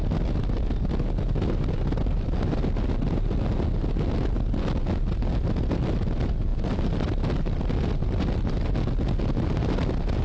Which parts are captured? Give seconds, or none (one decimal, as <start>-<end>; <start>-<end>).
0.0-6.5; 7.1-10.2